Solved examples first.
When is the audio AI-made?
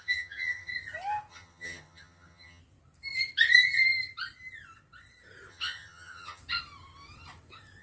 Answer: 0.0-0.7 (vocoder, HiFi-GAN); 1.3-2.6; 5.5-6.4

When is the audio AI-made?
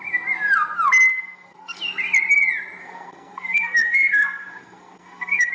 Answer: 1.1-1.8 (codec, SNAC); 2.8-5.5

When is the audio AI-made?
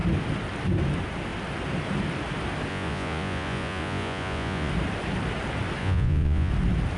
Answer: 2.7-4.7 (vocoder, Vocos); 5.8-6.5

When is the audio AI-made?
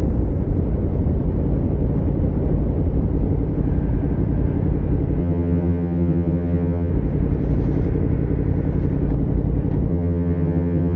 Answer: 5.2-6.9 (vocoder, HiFi-GAN); 9.9-11.0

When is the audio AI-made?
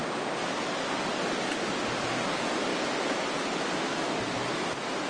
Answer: 2.2-5.1 (vocoder, BigVGAN v2)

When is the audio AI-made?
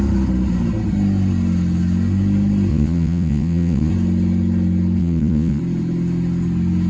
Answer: 2.7-3.9 (vocoder, Vocos); 5.0-5.6